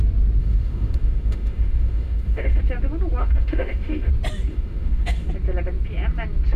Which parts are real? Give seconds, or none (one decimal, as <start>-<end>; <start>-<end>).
0.0-0.4; 2.6-3.2; 4.1-4.5; 5.3-6.6